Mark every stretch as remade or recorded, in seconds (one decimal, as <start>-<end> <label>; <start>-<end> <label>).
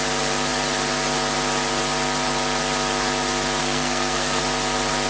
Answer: 0.0-3.6 recorded; 3.6-4.4 remade; 4.4-5.1 recorded